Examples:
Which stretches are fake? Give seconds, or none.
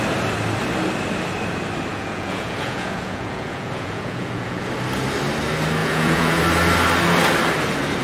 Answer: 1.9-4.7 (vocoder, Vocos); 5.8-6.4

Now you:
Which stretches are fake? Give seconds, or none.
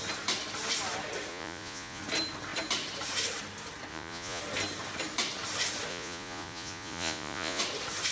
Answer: 1.3-2.0 (vocoder, Vocos); 3.9-4.4; 5.9-7.6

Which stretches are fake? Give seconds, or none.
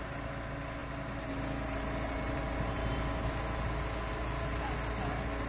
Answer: none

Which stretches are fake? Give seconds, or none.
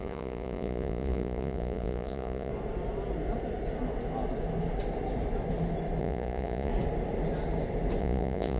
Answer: 0.0-2.5 (vocoder, Vocos); 6.0-6.7; 8.0-8.6